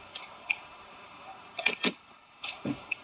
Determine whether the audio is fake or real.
fake